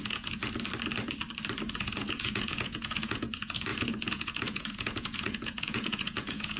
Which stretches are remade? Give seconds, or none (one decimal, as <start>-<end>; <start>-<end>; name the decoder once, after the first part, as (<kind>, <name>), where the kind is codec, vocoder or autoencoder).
0.0-0.4 (vocoder, Vocos); 1.8-6.6